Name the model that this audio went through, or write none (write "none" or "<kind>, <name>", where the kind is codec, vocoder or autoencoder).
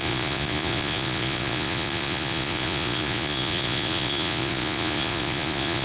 vocoder, Vocos